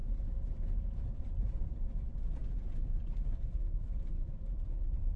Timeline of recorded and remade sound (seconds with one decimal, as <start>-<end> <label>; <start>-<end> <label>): 0.0-1.2 remade; 1.2-2.4 recorded; 2.4-5.2 remade